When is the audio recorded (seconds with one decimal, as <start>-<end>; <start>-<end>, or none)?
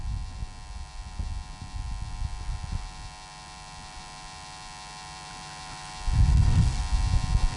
0.0-6.3; 6.8-7.6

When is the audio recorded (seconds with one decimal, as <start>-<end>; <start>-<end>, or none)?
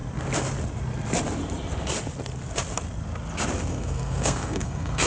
0.0-3.7